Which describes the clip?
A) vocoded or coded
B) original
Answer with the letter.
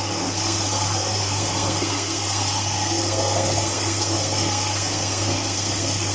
A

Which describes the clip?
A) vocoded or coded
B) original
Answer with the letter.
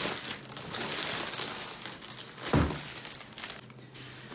B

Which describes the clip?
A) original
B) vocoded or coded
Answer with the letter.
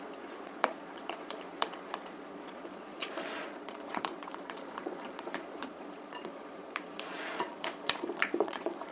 B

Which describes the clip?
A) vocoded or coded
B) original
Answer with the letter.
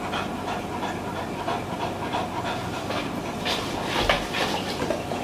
B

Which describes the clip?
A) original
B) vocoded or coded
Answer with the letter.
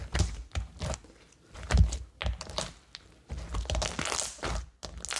A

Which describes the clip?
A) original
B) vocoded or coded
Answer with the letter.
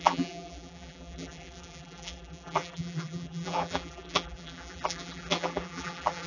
B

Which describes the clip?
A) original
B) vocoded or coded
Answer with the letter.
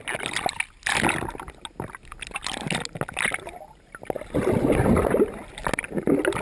A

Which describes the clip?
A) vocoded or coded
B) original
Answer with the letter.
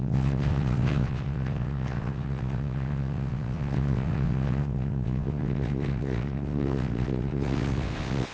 A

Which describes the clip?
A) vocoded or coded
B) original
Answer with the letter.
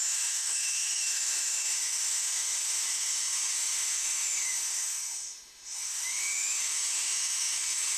A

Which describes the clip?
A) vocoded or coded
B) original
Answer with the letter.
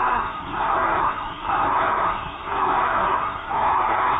A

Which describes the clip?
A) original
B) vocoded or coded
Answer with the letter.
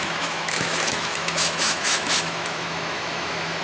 B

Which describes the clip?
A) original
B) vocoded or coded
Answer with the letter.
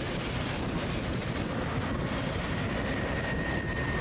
A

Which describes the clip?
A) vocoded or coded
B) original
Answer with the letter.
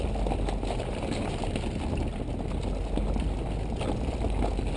B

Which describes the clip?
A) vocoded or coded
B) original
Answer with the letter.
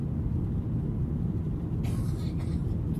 B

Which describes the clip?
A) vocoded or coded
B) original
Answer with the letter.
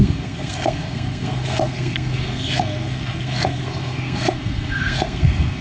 A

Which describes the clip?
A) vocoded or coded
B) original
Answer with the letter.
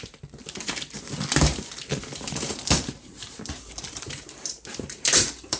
A